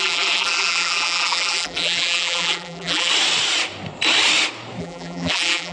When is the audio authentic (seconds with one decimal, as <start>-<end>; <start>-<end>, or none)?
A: 3.1-4.8